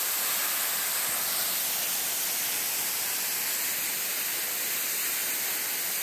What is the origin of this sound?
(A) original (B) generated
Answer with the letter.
A